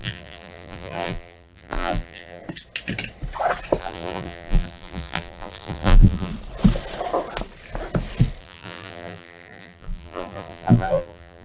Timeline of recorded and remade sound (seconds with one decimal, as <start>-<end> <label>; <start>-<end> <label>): 0.0-2.4 remade; 2.4-3.8 recorded; 3.8-6.3 remade; 6.3-8.4 recorded; 8.4-11.4 remade